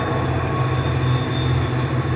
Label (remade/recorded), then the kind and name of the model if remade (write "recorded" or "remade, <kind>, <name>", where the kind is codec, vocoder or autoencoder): recorded